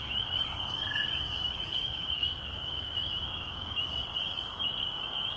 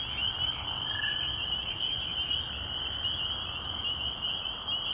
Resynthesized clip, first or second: first